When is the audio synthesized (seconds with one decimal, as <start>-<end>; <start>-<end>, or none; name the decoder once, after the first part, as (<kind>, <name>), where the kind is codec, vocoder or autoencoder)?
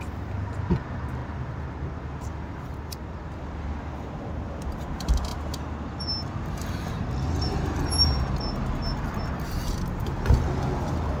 1.2-3.8 (vocoder, BigVGAN v2)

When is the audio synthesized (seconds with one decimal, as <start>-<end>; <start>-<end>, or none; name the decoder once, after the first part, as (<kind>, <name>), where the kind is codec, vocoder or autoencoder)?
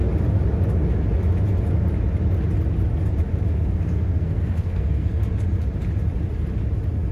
3.5-5.2 (codec, SNAC)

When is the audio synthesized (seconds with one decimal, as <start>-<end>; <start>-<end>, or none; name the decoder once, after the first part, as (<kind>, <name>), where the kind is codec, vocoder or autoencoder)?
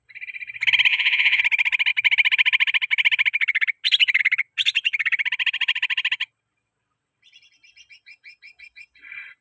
0.9-1.4 (vocoder, Vocos)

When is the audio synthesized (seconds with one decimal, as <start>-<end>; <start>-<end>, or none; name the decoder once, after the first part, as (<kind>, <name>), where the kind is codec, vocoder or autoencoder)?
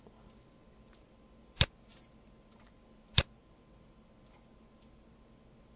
none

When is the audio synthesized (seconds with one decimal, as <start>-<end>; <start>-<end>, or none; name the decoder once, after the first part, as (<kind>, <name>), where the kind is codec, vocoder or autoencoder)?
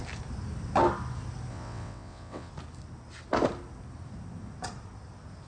1.5-2.5 (vocoder, WaveNeXt)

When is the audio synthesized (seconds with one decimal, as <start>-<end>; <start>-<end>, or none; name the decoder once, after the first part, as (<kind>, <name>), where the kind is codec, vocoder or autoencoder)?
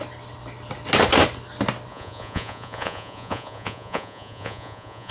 1.9-5.1 (vocoder, Vocos)